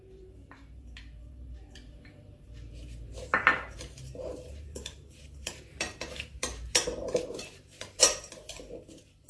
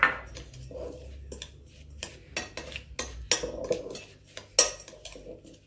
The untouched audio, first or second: second